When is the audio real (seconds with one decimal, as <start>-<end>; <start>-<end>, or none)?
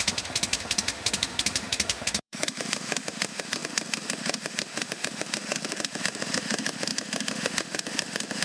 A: none